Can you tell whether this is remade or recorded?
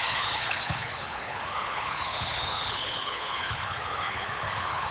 remade